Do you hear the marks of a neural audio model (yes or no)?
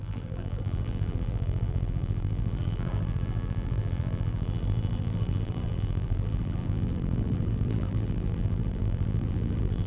yes